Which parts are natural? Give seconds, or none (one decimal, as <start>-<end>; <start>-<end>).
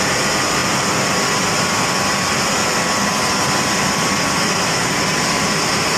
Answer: 0.0-6.0